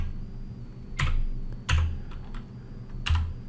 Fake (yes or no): no